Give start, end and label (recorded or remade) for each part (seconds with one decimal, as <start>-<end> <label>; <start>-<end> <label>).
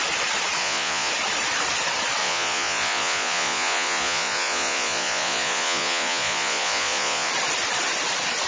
0.0-0.6 recorded; 0.6-1.1 remade; 1.1-2.2 recorded; 2.2-7.3 remade; 7.3-8.5 recorded